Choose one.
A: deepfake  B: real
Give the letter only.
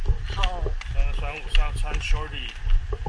B